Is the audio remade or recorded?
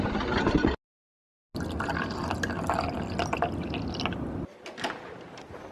recorded